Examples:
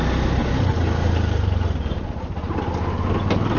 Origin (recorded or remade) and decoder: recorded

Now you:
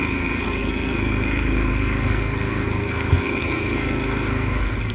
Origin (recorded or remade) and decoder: remade, codec, SNAC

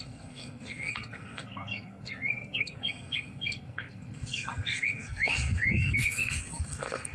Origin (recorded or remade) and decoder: remade, codec, SNAC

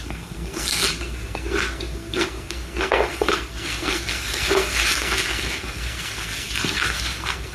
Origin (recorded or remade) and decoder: remade, codec, SNAC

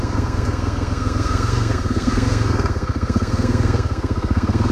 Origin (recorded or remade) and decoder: remade, codec, SNAC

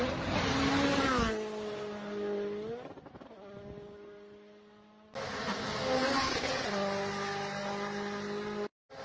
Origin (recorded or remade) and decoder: recorded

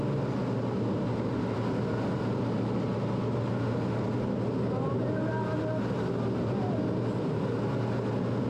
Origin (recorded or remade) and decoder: recorded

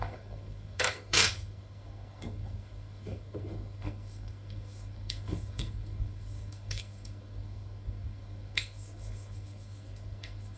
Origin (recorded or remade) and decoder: remade, codec, SNAC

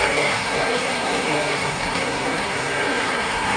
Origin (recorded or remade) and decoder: remade, codec, SNAC